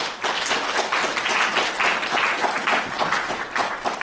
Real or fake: real